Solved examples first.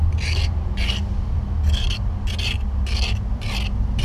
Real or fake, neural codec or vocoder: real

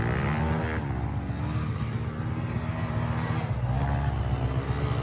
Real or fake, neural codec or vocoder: real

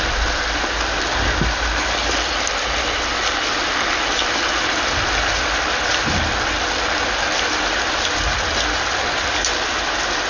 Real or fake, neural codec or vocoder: real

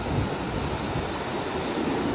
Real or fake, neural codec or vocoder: real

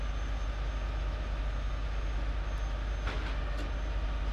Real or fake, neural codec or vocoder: real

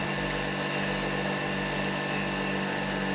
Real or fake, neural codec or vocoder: real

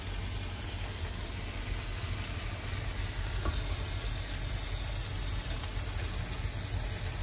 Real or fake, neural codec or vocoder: real